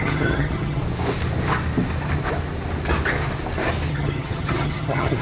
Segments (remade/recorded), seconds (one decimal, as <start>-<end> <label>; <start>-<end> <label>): 0.0-0.8 remade; 0.8-3.9 recorded; 3.9-5.2 remade